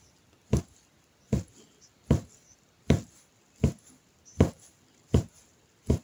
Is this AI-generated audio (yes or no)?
no